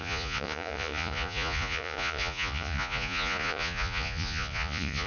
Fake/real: fake